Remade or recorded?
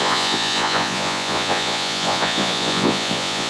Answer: remade